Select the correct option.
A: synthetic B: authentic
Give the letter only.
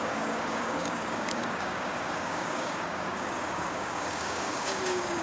A